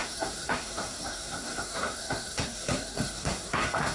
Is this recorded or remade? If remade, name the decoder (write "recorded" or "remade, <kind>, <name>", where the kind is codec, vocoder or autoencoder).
remade, codec, SNAC